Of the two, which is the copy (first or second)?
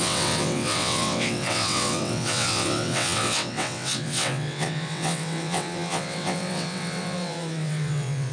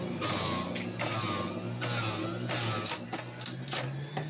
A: first